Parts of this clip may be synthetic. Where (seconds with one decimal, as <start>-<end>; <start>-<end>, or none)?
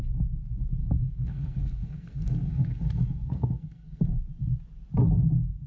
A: 0.8-4.2